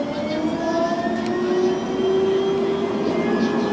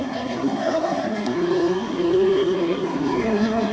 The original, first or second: first